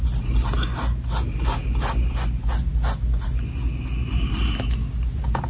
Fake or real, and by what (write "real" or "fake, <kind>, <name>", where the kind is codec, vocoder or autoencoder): real